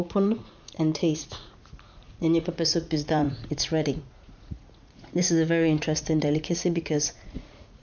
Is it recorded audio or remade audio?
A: remade